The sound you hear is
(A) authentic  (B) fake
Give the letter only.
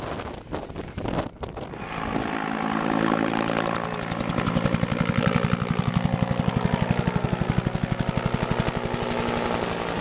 A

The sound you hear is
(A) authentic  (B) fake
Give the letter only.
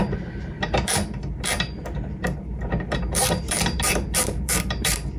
B